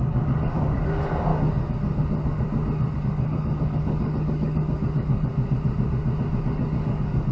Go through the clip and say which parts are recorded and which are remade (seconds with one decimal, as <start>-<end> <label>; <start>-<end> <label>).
0.0-1.3 remade; 1.3-3.0 recorded; 3.0-5.3 remade; 5.3-6.4 recorded; 6.4-7.3 remade

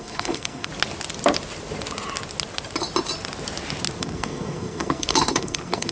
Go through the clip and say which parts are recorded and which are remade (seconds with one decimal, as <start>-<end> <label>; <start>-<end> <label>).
0.0-0.7 remade; 0.7-4.0 recorded; 4.0-5.9 remade

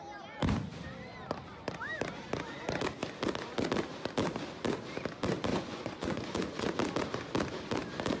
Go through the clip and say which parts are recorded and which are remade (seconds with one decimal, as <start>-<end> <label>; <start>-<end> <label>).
0.0-5.5 recorded; 5.5-6.7 remade; 6.7-8.2 recorded

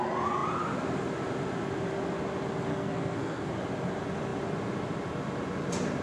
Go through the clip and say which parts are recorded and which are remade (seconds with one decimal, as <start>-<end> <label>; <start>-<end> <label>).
0.0-2.7 recorded; 2.7-3.5 remade; 3.5-6.0 recorded

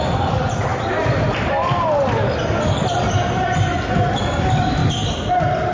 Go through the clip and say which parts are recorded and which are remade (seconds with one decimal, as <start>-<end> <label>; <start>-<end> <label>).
0.0-5.7 recorded

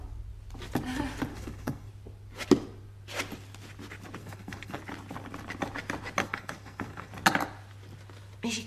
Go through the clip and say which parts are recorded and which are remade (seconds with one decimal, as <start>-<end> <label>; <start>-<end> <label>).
0.0-1.3 recorded; 1.3-1.9 remade; 1.9-4.2 recorded; 4.2-4.8 remade; 4.8-6.2 recorded; 6.2-7.1 remade; 7.1-8.7 recorded